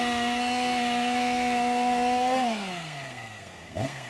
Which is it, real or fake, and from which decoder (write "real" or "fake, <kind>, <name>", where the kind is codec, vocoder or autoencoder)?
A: fake, codec, SNAC